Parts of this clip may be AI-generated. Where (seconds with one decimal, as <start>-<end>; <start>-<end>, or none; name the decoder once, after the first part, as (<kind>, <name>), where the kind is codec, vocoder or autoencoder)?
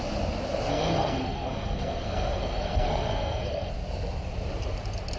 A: 0.7-3.7 (codec, SNAC)